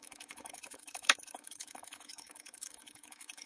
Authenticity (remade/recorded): remade